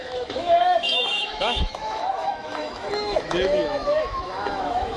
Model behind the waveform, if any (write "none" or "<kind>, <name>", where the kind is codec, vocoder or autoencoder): autoencoder, DAC-VAE